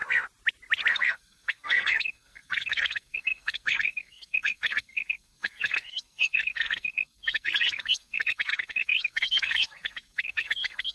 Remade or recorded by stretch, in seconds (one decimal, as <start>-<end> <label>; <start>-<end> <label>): 0.0-0.9 recorded; 0.9-10.9 remade